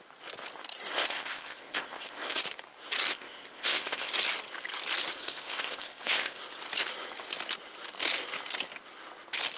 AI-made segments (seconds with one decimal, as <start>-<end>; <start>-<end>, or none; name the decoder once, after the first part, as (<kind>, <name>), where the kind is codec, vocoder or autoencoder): 0.9-2.4 (codec, ZipCodec); 3.1-4.1; 5.2-6.4